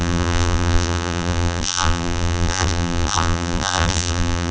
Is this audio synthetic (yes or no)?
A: yes